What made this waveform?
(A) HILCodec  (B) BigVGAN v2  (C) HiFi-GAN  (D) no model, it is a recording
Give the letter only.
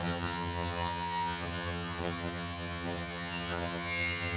C